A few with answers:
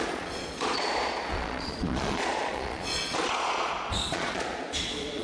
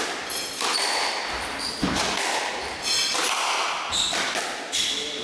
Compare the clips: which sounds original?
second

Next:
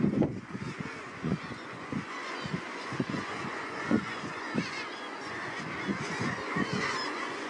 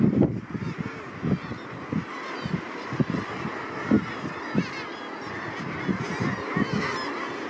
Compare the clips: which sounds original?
second